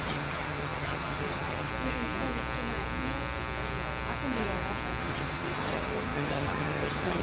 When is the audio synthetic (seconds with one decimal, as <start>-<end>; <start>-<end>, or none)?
0.0-1.7; 5.0-7.2